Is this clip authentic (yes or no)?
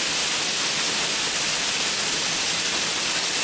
yes